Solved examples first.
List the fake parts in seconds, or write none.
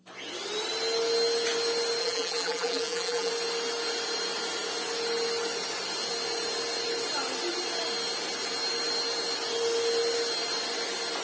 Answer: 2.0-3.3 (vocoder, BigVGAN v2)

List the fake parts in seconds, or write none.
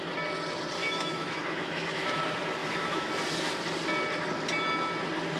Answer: 0.8-2.2 (autoencoder, DAC-VAE); 2.6-3.1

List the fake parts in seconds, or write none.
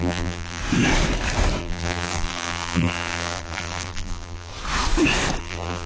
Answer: 0.0-0.6 (vocoder, BigVGAN v2); 1.6-4.5; 5.4-5.9